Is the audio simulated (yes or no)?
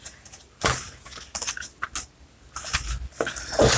no